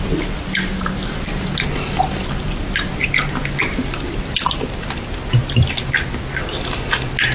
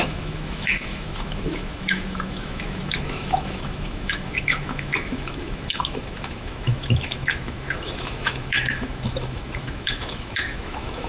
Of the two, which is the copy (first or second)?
second